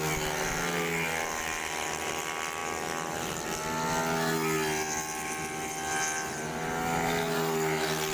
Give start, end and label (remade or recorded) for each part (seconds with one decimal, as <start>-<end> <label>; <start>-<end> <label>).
0.0-8.1 recorded